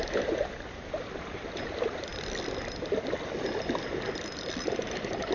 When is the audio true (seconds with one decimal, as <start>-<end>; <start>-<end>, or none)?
0.0-5.3